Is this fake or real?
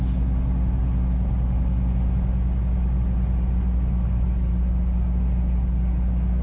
real